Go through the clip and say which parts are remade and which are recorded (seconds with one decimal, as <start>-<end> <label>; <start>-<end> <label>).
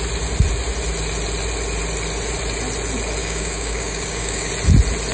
0.0-3.2 recorded; 3.2-4.5 remade; 4.5-5.1 recorded